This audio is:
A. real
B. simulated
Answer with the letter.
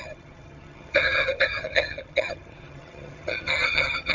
B